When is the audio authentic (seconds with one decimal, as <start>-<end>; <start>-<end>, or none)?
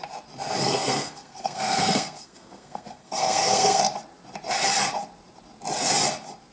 0.0-0.6; 3.8-6.5